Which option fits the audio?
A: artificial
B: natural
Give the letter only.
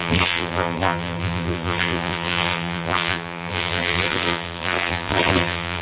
A